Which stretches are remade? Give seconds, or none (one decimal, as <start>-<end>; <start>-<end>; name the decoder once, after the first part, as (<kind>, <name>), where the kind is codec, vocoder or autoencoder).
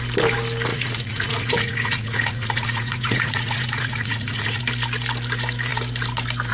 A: 0.7-4.6 (vocoder, Vocos)